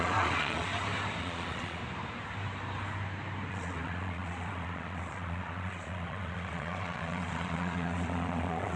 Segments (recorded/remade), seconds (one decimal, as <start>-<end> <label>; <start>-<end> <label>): 0.0-0.7 remade; 0.7-1.2 recorded; 1.2-1.8 remade; 1.8-3.5 recorded; 3.5-8.8 remade